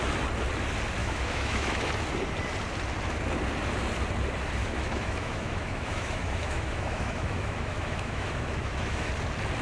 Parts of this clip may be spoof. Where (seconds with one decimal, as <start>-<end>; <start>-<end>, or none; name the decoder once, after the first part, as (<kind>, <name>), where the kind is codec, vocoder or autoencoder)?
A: 1.0-1.9 (autoencoder, DAC-VAE); 4.6-9.1